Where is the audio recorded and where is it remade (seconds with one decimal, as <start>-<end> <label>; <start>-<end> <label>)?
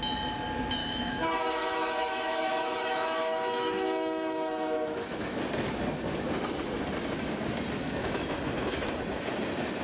0.0-0.8 recorded; 0.8-5.4 remade; 5.4-7.8 recorded; 7.8-8.4 remade; 8.4-9.8 recorded